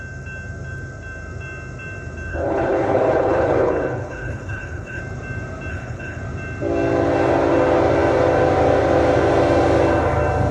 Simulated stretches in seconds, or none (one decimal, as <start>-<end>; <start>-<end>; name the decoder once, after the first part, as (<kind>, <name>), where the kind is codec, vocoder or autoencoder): 2.3-5.0 (codec, HILCodec); 5.7-6.2